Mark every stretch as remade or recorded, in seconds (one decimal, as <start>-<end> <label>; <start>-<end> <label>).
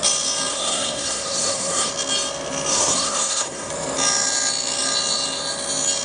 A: 0.0-0.5 recorded; 0.5-1.9 remade; 1.9-2.7 recorded; 2.7-3.7 remade; 3.7-6.0 recorded